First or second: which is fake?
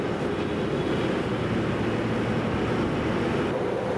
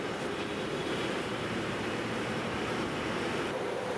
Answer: second